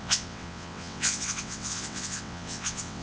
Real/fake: fake